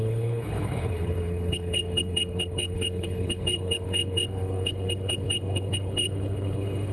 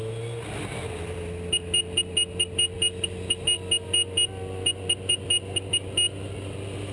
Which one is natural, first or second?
second